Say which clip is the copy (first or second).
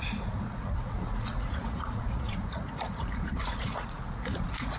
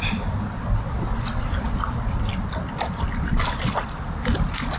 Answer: first